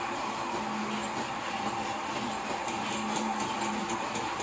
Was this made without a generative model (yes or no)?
yes